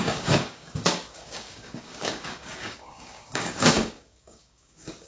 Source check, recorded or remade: remade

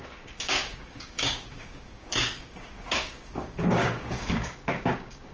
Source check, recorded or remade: remade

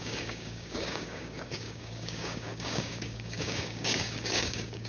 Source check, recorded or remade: remade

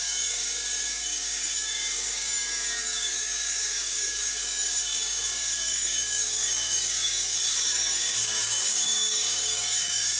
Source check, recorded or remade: remade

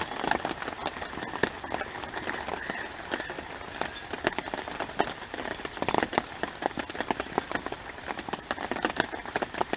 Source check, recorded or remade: recorded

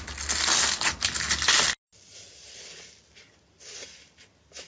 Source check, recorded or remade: recorded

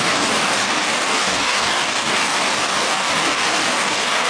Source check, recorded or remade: remade